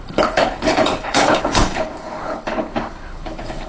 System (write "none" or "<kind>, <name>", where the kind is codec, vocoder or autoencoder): codec, HILCodec